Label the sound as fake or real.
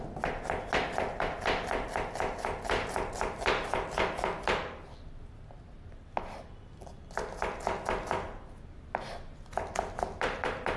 real